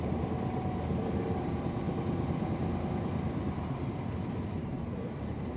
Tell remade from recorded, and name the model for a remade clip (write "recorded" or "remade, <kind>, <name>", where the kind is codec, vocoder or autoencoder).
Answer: remade, vocoder, BigVGAN v2